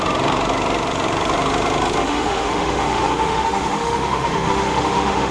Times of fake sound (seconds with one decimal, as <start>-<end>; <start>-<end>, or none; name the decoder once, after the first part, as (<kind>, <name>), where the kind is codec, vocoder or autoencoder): 2.0-5.3 (autoencoder, DAC-VAE)